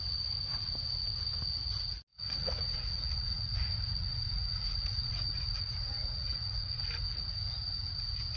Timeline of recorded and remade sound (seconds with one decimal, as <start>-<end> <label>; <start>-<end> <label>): 0.0-2.1 recorded; 2.1-6.8 remade; 6.8-8.4 recorded